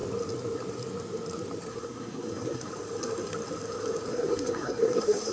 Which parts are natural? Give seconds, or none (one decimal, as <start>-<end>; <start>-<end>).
0.0-1.7; 2.7-4.1